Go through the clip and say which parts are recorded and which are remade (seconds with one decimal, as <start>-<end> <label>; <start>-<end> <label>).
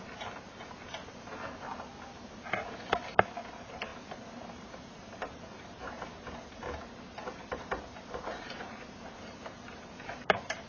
0.0-1.3 remade; 1.3-3.5 recorded; 3.5-10.7 remade